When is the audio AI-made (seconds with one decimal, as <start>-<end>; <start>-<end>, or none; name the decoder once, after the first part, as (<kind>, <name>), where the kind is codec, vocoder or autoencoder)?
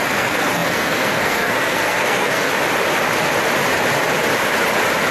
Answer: 0.0-2.5 (codec, SNAC)